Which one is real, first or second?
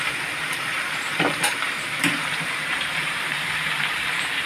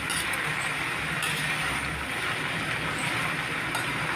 second